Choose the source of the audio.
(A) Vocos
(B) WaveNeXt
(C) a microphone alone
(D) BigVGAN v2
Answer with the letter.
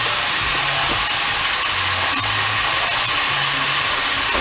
C